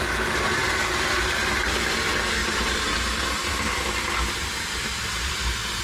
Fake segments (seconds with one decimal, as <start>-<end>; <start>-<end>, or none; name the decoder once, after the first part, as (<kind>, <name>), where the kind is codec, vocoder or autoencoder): 2.4-2.9 (vocoder, BigVGAN v2); 4.4-5.8